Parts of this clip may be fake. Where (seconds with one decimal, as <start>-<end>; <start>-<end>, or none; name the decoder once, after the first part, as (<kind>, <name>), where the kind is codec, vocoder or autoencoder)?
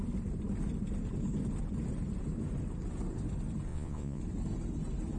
3.7-4.2 (vocoder, Vocos)